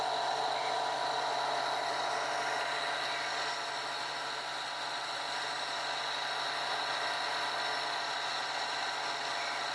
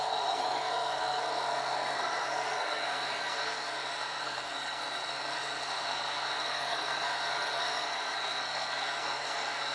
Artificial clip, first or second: second